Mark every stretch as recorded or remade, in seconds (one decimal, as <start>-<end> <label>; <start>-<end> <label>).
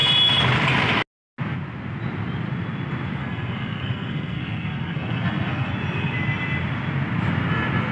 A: 0.0-3.2 recorded; 3.2-5.7 remade; 5.7-7.9 recorded